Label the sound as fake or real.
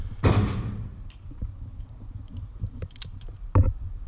real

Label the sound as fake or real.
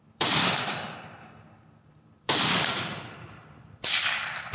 fake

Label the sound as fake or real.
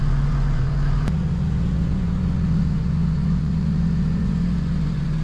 fake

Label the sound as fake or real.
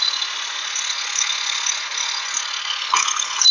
fake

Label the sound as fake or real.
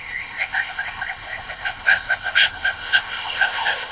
fake